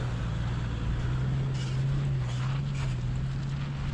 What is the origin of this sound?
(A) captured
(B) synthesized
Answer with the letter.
A